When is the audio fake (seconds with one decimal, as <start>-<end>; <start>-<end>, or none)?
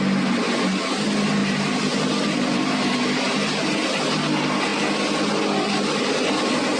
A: 1.4-3.3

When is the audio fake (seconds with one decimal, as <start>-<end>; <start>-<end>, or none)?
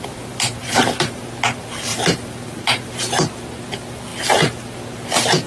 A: 0.6-1.2; 1.9-3.0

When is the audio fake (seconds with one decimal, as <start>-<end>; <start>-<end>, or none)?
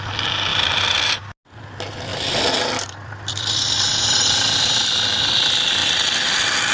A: 0.5-1.2; 2.1-5.2; 5.8-6.3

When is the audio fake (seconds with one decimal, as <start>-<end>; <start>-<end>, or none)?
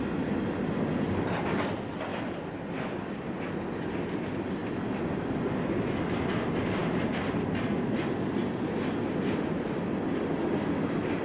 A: none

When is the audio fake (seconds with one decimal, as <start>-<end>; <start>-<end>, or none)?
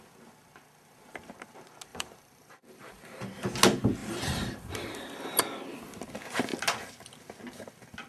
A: 1.9-3.5; 4.0-5.4